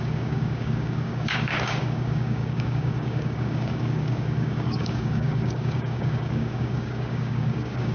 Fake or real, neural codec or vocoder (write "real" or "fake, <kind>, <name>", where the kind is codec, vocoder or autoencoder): fake, codec, DAC